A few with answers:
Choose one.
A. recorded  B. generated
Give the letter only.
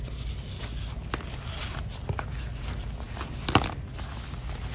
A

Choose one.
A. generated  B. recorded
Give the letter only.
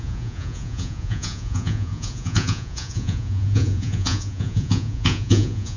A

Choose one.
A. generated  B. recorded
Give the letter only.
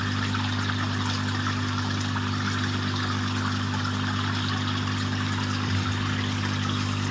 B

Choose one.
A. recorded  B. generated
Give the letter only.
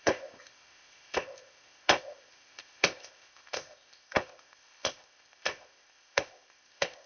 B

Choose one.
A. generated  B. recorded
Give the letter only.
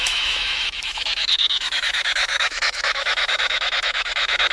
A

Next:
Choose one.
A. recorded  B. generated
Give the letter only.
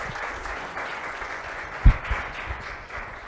B